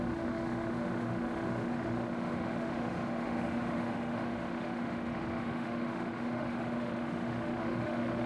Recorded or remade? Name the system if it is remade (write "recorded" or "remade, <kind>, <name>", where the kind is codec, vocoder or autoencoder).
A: remade, autoencoder, DAC-VAE